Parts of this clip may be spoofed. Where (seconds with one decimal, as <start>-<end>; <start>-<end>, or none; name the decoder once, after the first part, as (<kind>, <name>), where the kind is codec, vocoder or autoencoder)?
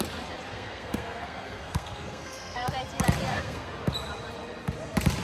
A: 0.5-2.7 (codec, SNAC); 3.3-3.9